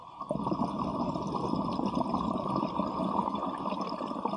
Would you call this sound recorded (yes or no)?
yes